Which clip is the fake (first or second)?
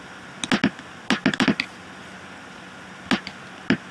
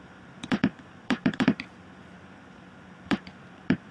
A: second